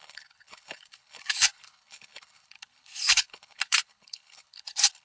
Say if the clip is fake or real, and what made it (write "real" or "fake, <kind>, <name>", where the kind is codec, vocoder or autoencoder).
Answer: fake, codec, HILCodec